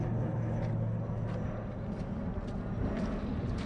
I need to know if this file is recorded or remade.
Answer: recorded